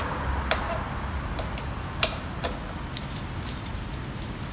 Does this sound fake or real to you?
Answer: real